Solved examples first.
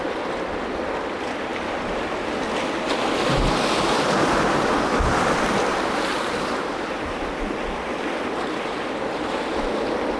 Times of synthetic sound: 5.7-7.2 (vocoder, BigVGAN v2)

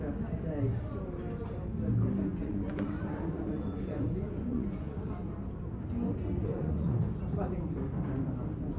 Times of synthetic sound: 2.3-5.0 (vocoder, Vocos); 6.4-7.0

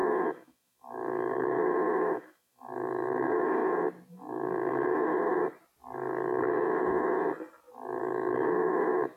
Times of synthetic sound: 0.0-3.6 (autoencoder, DAC-VAE); 4.1-5.3; 8.0-9.2